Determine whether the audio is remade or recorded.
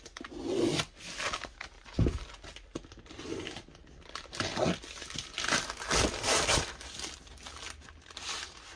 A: recorded